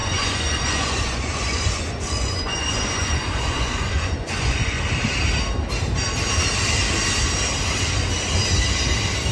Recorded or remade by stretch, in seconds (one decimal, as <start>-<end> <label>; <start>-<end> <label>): 0.0-4.8 remade; 4.8-9.3 recorded